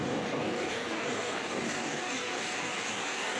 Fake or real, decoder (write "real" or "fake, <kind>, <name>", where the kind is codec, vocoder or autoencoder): fake, codec, DAC